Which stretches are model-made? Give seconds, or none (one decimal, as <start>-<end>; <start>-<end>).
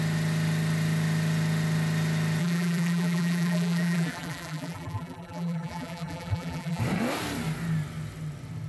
2.4-6.8